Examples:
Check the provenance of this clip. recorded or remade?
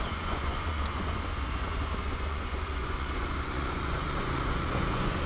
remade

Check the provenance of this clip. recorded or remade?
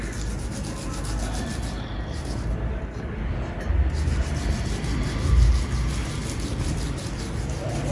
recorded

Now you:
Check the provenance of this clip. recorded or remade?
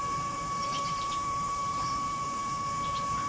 remade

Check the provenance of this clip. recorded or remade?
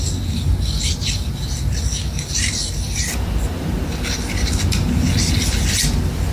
recorded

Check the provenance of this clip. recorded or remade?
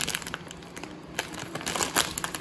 recorded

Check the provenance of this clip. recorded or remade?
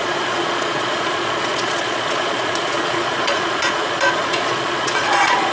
remade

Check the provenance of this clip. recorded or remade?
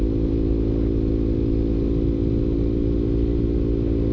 recorded